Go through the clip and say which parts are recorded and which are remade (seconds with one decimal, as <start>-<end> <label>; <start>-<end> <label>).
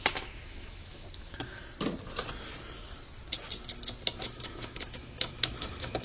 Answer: 0.0-1.6 remade; 1.6-4.2 recorded; 4.2-6.0 remade